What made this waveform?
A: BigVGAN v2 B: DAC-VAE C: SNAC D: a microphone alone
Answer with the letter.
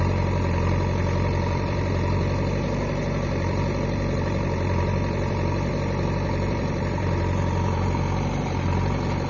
A